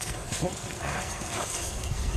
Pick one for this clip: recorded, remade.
remade